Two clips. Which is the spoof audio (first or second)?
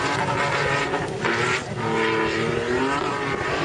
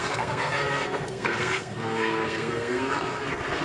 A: second